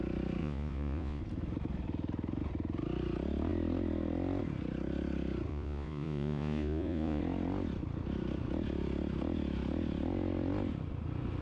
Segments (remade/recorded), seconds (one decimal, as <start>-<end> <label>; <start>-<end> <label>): 0.0-0.4 recorded; 0.4-1.2 remade; 1.2-5.5 recorded; 5.5-7.2 remade; 7.2-11.4 recorded

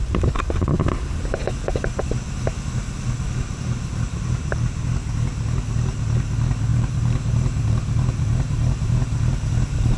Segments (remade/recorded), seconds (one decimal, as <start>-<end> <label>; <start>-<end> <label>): 0.0-1.4 recorded; 1.4-2.0 remade; 2.0-3.9 recorded; 3.9-4.9 remade; 4.9-6.7 recorded; 6.7-9.5 remade; 9.5-10.0 recorded

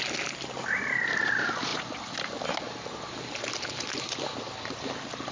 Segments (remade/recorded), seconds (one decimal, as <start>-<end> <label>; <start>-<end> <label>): 0.0-5.3 recorded

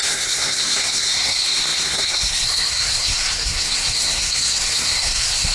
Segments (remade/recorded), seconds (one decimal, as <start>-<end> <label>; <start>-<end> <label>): 0.0-5.5 remade

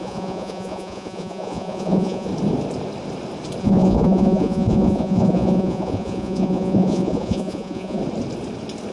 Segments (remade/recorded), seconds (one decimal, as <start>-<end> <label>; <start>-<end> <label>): 0.0-2.3 remade; 2.3-3.6 recorded; 3.6-8.0 remade; 8.0-8.9 recorded

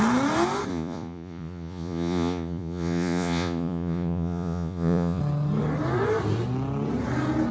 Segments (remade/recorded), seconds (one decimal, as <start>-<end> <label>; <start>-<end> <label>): 0.0-0.7 recorded; 0.7-5.2 remade; 5.2-7.5 recorded

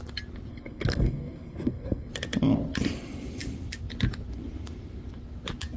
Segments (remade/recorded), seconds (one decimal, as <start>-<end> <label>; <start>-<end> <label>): 0.0-0.5 recorded; 0.5-2.1 remade; 2.1-5.8 recorded

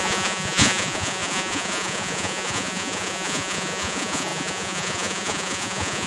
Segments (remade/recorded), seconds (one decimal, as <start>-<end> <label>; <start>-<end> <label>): 0.0-6.1 remade